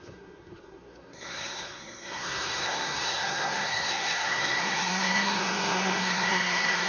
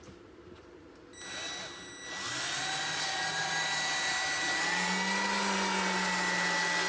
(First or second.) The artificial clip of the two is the first